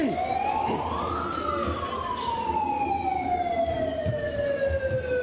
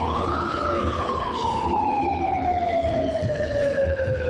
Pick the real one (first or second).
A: first